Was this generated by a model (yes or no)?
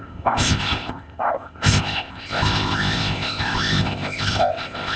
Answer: yes